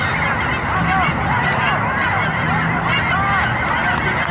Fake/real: real